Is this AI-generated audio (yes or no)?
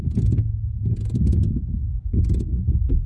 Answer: no